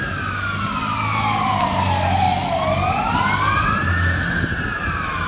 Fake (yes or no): no